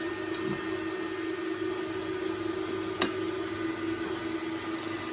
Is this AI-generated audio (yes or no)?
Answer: no